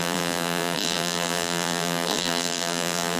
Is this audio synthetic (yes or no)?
yes